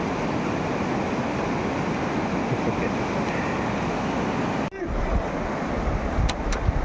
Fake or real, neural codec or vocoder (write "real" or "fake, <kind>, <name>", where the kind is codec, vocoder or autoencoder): real